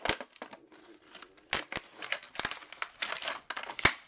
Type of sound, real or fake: real